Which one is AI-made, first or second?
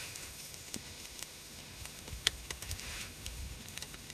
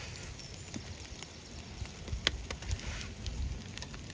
first